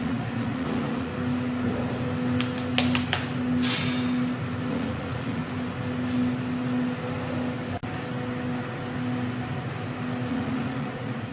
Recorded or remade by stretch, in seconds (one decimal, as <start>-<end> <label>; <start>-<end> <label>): 0.0-1.1 remade; 1.1-4.7 recorded; 4.7-5.4 remade; 5.4-10.3 recorded; 10.3-11.3 remade